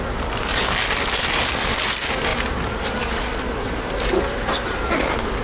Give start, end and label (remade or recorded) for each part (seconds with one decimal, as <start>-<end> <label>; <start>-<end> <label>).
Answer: 0.0-5.4 recorded